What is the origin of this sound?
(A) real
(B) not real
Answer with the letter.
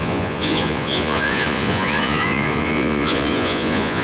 B